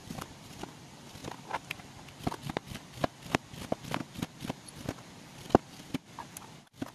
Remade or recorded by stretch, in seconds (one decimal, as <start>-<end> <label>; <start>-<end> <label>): 0.0-0.6 remade; 0.6-6.9 recorded